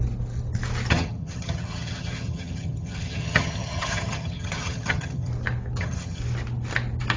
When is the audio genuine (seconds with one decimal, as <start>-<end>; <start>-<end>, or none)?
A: 0.0-0.9; 5.3-5.8; 6.2-7.2